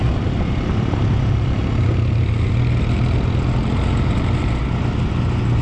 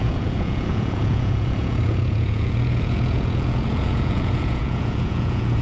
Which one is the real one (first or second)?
first